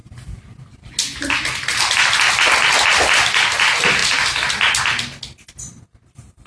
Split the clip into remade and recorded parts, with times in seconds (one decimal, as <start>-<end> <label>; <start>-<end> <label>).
0.0-6.5 recorded